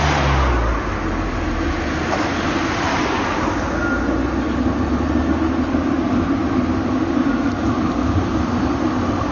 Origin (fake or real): real